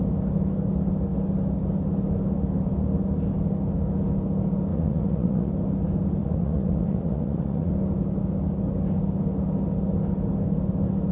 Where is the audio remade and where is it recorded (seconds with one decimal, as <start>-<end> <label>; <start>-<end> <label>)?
0.0-4.7 recorded; 4.7-5.5 remade; 5.5-6.2 recorded; 6.2-7.7 remade; 7.7-11.1 recorded